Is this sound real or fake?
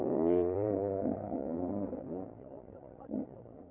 fake